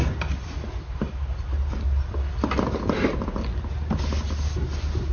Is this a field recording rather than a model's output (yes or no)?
yes